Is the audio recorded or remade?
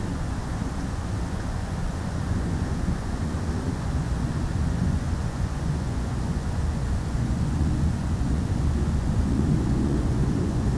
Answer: remade